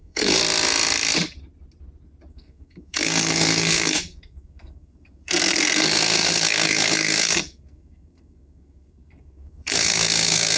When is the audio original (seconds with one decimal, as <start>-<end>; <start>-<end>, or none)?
0.4-2.3

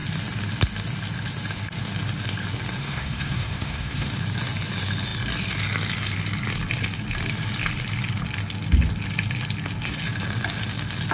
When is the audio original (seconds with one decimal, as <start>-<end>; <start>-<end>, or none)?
0.0-2.8; 4.1-11.1

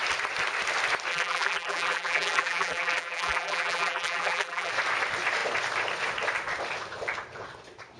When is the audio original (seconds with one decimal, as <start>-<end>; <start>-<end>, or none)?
0.0-1.1; 4.7-8.0

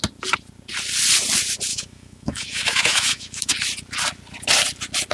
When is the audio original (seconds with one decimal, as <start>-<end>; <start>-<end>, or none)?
0.0-1.7; 3.5-5.1

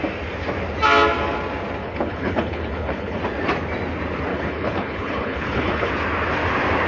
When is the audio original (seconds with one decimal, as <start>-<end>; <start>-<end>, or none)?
0.0-1.8; 3.2-4.3; 5.9-6.9